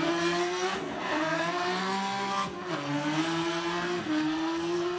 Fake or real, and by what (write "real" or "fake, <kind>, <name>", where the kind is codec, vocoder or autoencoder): fake, codec, SNAC